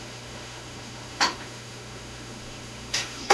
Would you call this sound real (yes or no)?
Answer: no